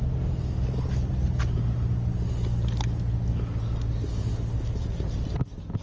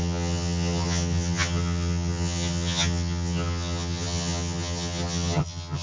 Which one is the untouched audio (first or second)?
first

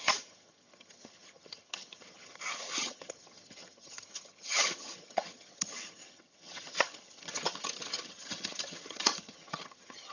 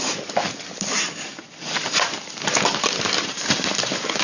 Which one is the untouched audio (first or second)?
second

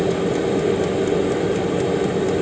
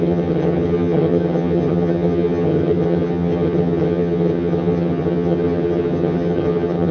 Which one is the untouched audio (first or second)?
first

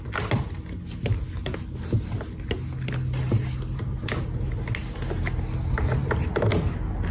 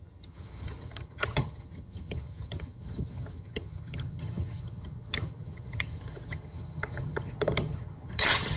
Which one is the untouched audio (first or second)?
first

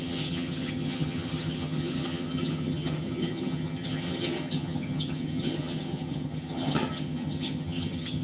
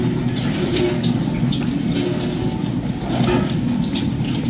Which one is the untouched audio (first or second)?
second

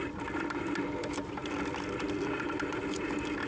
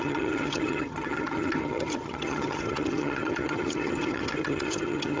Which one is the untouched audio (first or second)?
first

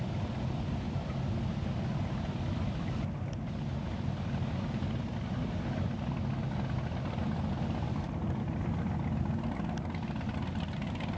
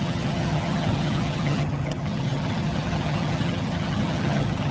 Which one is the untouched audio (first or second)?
first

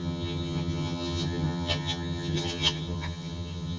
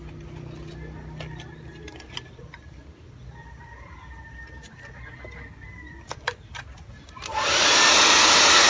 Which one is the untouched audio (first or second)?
second